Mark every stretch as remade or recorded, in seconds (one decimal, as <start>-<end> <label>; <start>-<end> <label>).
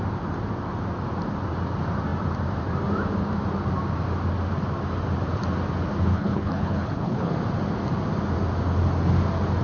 0.0-6.1 recorded; 6.1-7.3 remade; 7.3-9.6 recorded